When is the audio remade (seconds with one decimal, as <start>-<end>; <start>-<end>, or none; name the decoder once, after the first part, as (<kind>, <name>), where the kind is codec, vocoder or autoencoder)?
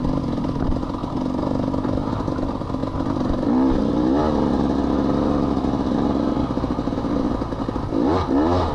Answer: none